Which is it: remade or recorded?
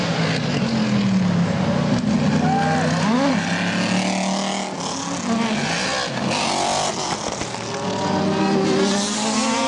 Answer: recorded